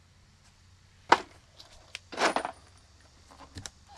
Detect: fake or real real